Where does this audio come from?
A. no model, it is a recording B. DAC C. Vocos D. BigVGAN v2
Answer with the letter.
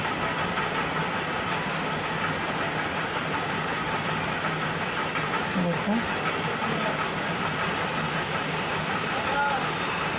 A